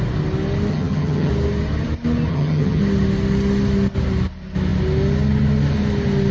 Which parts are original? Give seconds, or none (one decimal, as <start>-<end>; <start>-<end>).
0.0-0.7; 1.3-2.3; 2.8-6.3